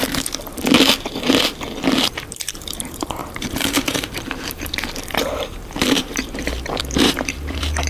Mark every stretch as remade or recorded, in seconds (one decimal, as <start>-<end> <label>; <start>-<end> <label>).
0.0-1.9 recorded; 1.9-7.9 remade